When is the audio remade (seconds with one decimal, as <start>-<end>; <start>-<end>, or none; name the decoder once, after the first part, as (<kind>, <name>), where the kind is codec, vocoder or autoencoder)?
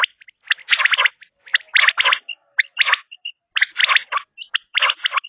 none